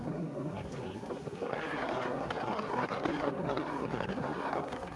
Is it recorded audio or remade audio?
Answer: remade